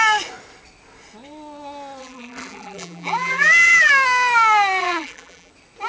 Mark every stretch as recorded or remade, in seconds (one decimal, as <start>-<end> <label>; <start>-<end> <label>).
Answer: 0.0-2.0 recorded; 2.0-3.9 remade; 3.9-4.8 recorded; 4.8-5.5 remade; 5.5-5.9 recorded